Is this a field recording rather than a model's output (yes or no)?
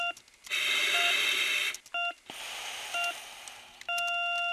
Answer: yes